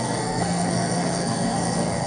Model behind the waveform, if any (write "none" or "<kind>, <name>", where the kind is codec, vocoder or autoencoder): codec, SNAC